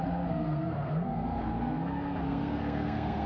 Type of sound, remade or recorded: remade